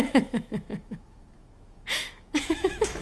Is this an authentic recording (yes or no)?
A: no